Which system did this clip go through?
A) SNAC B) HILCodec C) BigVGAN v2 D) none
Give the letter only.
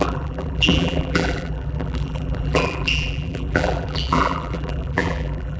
C